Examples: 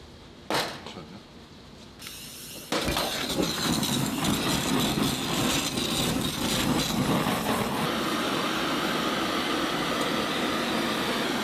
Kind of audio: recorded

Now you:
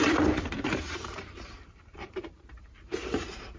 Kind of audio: remade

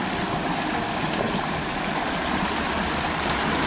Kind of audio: recorded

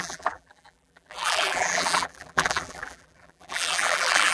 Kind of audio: remade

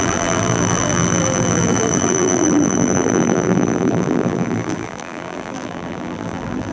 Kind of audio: remade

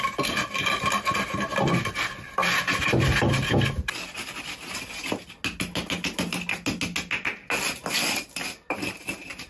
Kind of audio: recorded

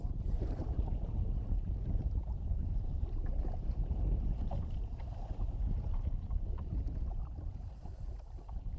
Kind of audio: remade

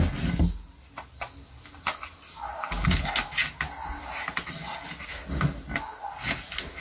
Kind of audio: recorded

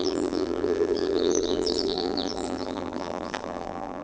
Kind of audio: remade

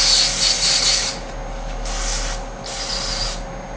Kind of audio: recorded